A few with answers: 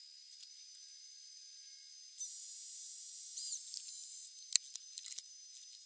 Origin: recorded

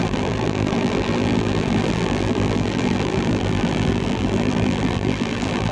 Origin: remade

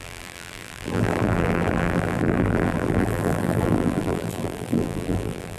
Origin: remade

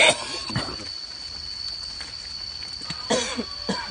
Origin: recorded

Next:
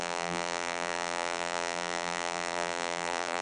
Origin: remade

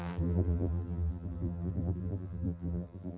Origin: remade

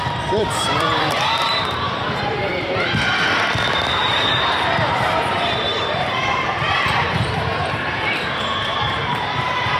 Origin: remade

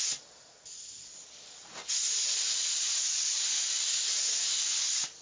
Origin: recorded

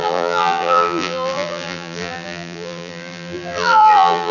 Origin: remade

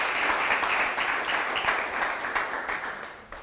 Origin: recorded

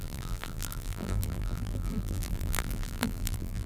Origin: remade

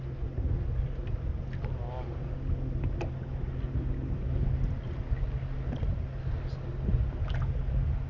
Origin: recorded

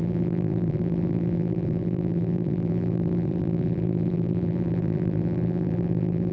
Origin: remade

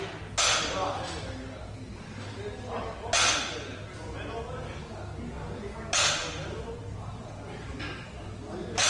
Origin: recorded